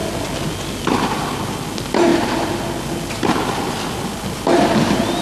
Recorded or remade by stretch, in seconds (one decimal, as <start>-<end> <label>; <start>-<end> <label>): 0.0-5.2 recorded